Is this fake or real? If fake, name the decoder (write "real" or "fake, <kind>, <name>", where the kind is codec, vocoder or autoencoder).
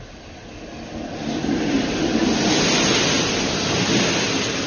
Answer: real